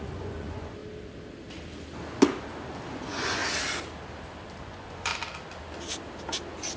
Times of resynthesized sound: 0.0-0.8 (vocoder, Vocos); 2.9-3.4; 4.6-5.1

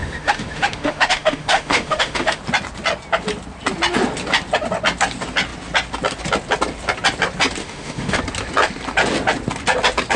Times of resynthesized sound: 0.0-2.4 (autoencoder, DAC-VAE); 7.6-8.2

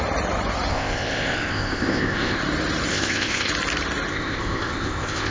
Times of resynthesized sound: 0.7-2.4 (codec, ZipCodec); 2.9-3.5; 4.1-5.3

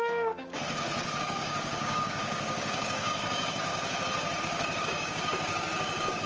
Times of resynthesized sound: 0.0-0.6 (codec, DAC); 1.2-3.7; 4.4-6.3